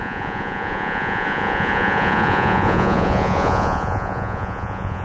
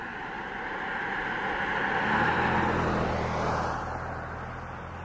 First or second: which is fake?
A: first